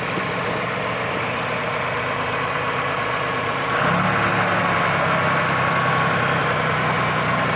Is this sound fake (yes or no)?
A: yes